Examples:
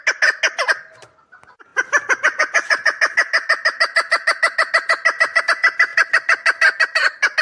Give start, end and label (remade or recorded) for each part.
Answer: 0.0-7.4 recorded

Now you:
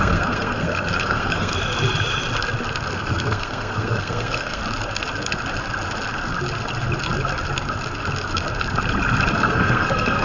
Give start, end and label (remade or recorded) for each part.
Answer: 0.0-1.5 remade; 1.5-2.9 recorded; 2.9-4.6 remade; 4.6-9.3 recorded; 9.3-10.2 remade

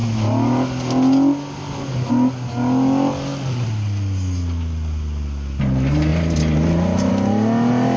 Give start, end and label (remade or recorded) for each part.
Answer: 0.0-8.0 recorded

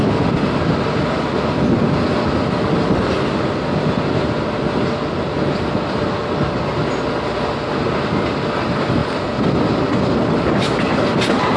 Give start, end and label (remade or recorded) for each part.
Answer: 0.0-11.6 recorded